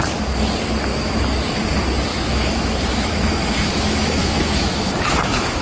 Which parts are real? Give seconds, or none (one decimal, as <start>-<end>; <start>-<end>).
0.0-0.9; 1.6-2.1